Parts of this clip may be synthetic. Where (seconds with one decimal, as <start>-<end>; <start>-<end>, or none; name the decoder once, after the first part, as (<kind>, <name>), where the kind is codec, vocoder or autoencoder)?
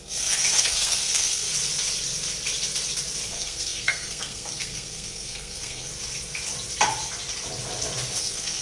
0.0-1.5 (codec, SNAC); 3.3-5.9; 8.2-8.6